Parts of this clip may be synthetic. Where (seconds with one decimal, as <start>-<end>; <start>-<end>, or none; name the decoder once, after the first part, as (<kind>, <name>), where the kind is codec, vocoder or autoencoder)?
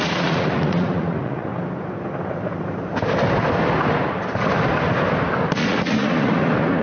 0.0-1.5 (vocoder, Vocos); 5.6-6.8